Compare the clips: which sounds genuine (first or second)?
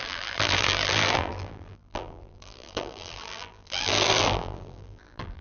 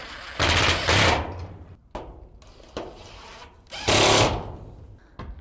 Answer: second